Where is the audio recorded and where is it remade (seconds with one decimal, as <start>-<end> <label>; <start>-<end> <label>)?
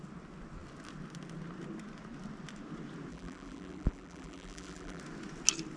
0.0-3.1 recorded; 3.1-5.0 remade; 5.0-5.8 recorded